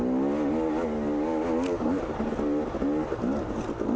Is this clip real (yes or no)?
yes